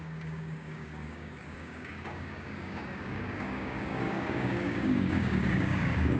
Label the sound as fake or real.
fake